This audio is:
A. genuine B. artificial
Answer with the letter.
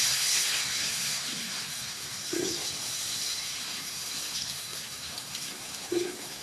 B